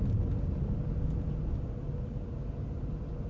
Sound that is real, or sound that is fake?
real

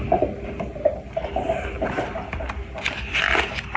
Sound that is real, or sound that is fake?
real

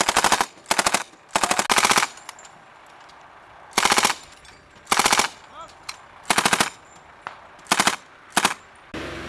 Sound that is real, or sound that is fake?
real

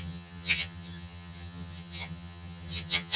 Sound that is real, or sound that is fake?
fake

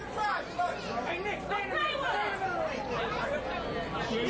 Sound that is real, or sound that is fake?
real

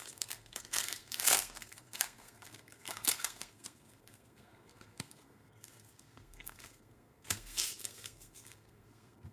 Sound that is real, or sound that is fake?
fake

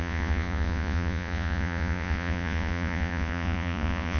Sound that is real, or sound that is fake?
fake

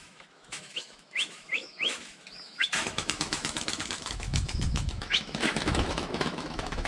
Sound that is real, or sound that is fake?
fake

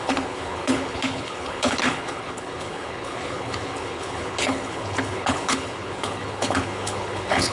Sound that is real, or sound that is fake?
fake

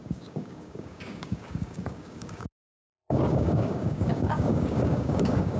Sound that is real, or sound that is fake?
fake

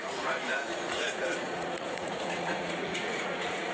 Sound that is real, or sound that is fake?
fake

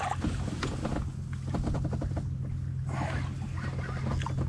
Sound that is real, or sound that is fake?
real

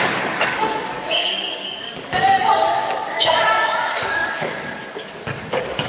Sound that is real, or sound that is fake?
fake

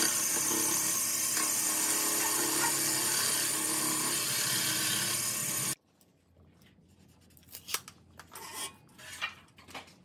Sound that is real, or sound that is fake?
real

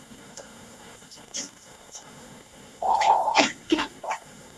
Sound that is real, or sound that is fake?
fake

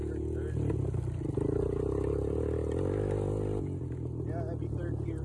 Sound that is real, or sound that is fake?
real